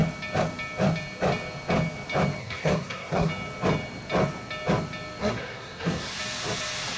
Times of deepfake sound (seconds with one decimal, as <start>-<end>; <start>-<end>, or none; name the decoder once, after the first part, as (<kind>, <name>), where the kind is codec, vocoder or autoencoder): 2.4-3.3 (codec, SNAC); 5.2-6.1